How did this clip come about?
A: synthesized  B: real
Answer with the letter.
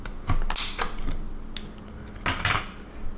B